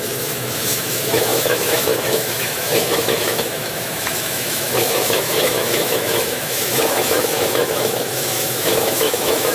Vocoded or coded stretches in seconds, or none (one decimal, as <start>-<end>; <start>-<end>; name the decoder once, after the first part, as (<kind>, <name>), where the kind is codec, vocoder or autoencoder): 0.0-9.5 (autoencoder, DAC-VAE)